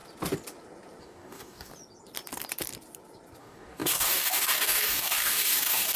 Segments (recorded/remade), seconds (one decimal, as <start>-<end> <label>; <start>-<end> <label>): 0.0-1.0 recorded; 1.0-1.7 remade; 1.7-3.4 recorded; 3.4-6.0 remade